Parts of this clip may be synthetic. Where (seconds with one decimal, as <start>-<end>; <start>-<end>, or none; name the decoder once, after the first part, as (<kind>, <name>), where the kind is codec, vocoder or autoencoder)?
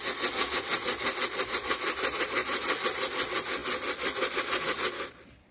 none